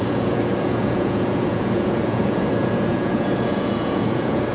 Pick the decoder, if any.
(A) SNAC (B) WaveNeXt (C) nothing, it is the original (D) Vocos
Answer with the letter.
D